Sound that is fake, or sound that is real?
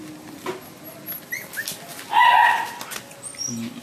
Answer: real